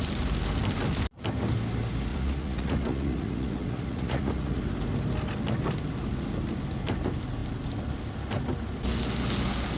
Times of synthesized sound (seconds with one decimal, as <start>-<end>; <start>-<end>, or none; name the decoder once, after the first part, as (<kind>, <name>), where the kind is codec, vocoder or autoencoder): 2.1-4.6 (vocoder, Vocos)